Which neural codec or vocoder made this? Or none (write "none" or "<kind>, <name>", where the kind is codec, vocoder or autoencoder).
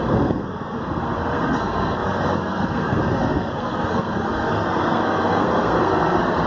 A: codec, SNAC